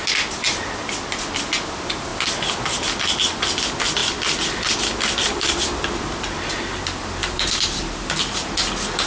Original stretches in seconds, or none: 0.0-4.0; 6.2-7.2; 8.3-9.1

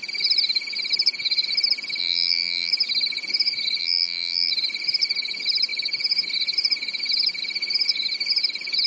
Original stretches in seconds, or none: 0.0-2.0; 2.7-3.8; 4.5-8.9

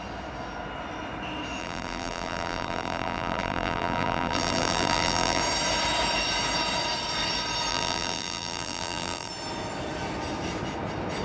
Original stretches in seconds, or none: 0.0-1.6; 5.4-7.7; 9.3-11.2

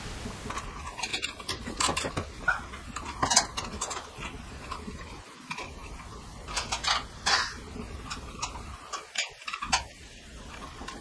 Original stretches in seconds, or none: 0.0-11.0

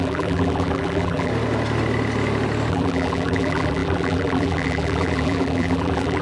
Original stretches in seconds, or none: 1.3-2.7

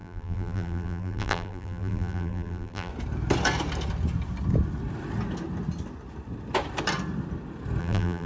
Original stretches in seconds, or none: 2.9-7.8

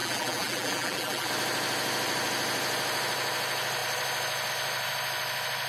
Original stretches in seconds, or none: 1.3-5.7

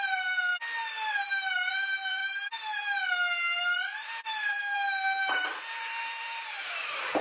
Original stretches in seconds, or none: 0.5-1.1; 2.2-3.6